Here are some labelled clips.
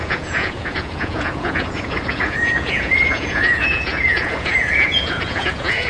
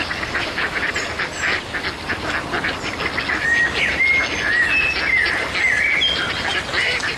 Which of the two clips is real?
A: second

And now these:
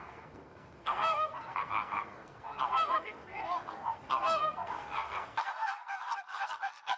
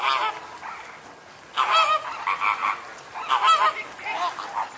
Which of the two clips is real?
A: second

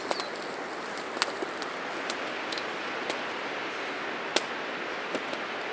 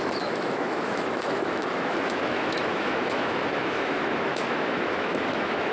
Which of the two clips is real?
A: first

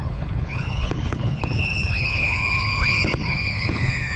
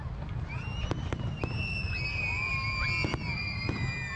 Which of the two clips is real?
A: second